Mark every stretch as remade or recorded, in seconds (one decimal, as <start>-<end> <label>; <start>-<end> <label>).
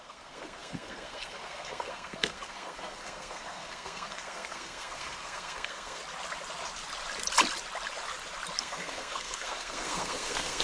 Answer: 0.0-6.0 remade; 6.0-8.6 recorded; 8.6-10.6 remade